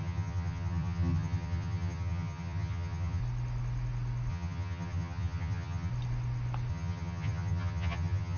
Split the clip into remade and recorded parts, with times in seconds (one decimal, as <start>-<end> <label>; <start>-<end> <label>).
0.0-3.2 remade; 3.2-4.3 recorded; 4.3-5.9 remade; 5.9-6.7 recorded; 6.7-8.4 remade